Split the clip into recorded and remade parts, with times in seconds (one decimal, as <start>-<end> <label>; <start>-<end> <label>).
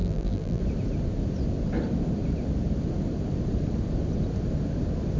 0.0-0.6 remade; 0.6-5.2 recorded